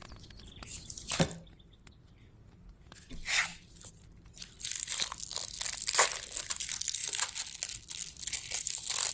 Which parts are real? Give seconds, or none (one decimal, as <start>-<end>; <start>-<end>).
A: 0.0-9.1